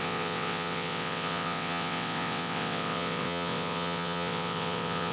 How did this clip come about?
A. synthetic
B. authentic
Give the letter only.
A